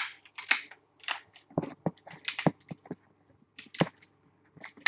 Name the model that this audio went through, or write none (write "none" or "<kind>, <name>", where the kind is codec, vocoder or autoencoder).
none